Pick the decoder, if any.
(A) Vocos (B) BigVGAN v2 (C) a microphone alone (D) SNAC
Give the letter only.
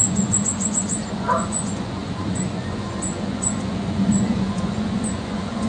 A